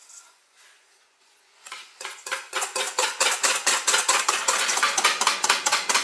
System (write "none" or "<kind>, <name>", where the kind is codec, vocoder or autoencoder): vocoder, Vocos